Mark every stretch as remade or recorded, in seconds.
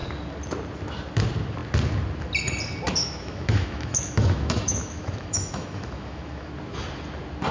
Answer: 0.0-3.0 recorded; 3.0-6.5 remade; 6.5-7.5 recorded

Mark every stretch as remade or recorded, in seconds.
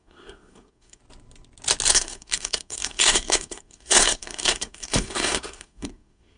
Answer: 0.0-1.0 remade; 1.0-1.9 recorded; 1.9-6.4 remade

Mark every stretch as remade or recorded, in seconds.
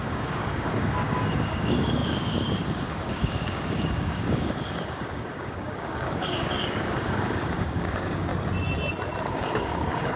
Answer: 0.0-8.3 remade; 8.3-9.3 recorded; 9.3-10.2 remade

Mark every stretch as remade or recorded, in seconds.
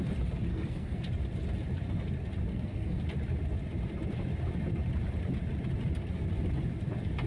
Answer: 0.0-0.5 recorded; 0.5-1.0 remade; 1.0-2.5 recorded; 2.5-3.0 remade; 3.0-7.3 recorded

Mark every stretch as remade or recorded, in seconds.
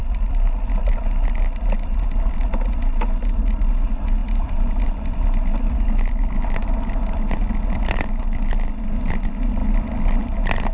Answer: 0.0-1.0 remade; 1.0-4.2 recorded; 4.2-6.9 remade; 6.9-9.6 recorded; 9.6-10.2 remade; 10.2-10.7 recorded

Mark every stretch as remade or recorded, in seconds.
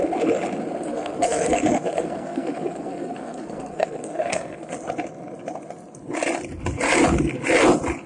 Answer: 0.0-0.9 recorded; 0.9-4.7 remade; 4.7-8.1 recorded